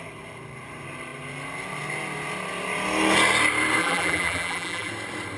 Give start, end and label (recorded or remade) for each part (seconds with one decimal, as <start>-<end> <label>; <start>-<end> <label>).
0.0-3.8 recorded; 3.8-4.9 remade; 4.9-5.4 recorded